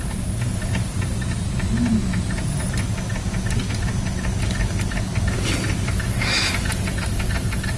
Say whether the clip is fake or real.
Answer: real